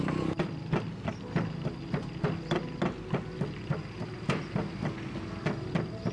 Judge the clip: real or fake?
real